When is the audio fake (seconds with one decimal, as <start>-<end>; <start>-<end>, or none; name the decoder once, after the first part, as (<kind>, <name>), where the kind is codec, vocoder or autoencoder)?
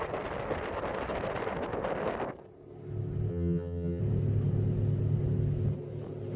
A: 3.3-4.0 (vocoder, HiFi-GAN)